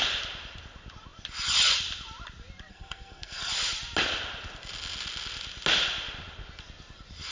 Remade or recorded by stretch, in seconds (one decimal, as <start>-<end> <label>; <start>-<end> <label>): 0.0-2.7 recorded; 2.7-3.5 remade; 3.5-7.3 recorded